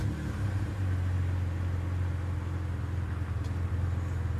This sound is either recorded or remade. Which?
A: recorded